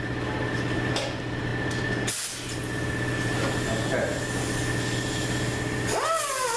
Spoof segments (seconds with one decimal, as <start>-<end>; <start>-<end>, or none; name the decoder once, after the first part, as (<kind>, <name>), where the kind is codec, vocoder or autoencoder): none

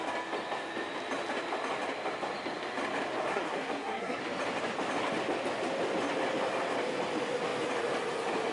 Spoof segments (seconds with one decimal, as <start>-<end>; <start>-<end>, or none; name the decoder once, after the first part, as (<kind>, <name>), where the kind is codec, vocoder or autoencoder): 3.3-4.2 (codec, SNAC)

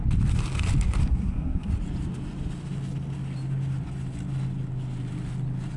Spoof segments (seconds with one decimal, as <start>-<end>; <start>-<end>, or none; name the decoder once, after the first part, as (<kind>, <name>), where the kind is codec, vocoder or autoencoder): 1.0-1.7 (codec, SNAC)

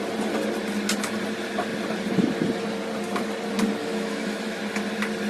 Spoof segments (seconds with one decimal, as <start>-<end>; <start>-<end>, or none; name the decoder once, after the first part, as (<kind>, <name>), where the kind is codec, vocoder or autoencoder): 3.8-4.6 (autoencoder, DAC-VAE)